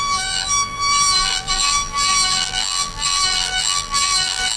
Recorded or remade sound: remade